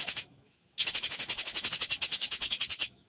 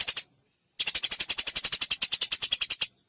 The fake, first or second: first